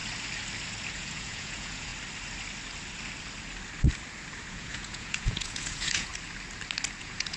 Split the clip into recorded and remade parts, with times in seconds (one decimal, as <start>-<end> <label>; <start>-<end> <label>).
0.0-0.9 recorded; 0.9-1.9 remade; 1.9-4.5 recorded; 4.5-6.1 remade; 6.1-7.0 recorded; 7.0-7.4 remade